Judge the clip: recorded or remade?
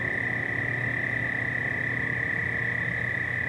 recorded